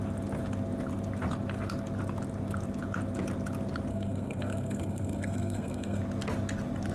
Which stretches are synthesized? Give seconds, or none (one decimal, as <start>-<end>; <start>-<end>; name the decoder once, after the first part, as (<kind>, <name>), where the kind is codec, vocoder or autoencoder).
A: 3.9-6.0 (codec, SNAC)